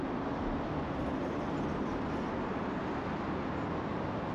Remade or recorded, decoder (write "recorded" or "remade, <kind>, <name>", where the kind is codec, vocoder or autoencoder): recorded